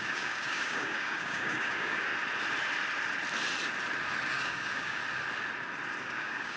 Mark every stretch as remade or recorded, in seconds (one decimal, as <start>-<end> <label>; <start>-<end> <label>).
0.0-2.1 remade; 2.1-4.3 recorded; 4.3-5.0 remade; 5.0-6.0 recorded; 6.0-6.6 remade

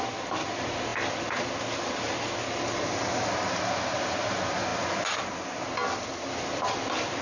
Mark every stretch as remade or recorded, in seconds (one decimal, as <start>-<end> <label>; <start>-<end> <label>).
0.0-7.2 recorded

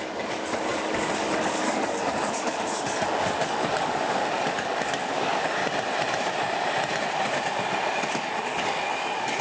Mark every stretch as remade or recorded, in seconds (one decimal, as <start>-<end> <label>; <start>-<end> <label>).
0.0-5.6 remade; 5.6-7.9 recorded; 7.9-9.4 remade

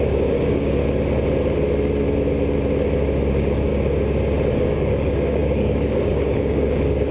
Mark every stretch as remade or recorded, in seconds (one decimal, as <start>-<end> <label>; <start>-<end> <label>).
0.0-0.8 remade; 0.8-3.3 recorded; 3.3-3.7 remade; 3.7-4.5 recorded; 4.5-7.1 remade

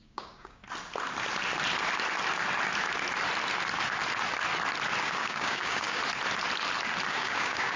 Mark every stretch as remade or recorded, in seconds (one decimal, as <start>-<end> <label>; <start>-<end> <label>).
0.0-0.6 remade; 0.6-5.0 recorded; 5.0-6.0 remade; 6.0-7.1 recorded; 7.1-7.8 remade

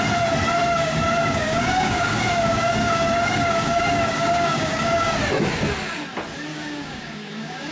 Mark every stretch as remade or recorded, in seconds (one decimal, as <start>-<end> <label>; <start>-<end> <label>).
0.0-0.6 recorded; 0.6-5.2 remade; 5.2-6.5 recorded; 6.5-7.7 remade

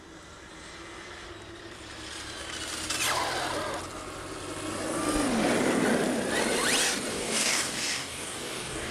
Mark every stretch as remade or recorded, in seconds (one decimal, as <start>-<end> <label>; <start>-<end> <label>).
0.0-7.1 recorded; 7.1-8.9 remade